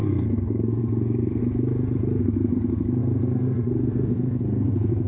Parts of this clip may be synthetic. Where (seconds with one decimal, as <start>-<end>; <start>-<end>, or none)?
0.0-1.4; 2.2-5.1